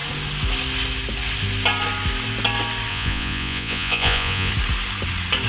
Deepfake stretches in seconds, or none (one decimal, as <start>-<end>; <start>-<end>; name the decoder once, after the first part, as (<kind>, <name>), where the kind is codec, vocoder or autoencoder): 2.9-4.5 (vocoder, Vocos)